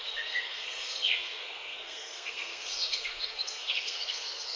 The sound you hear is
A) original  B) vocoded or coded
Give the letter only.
B